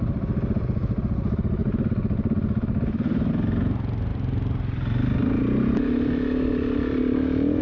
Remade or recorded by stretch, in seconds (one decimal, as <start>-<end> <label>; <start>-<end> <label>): 0.0-7.6 recorded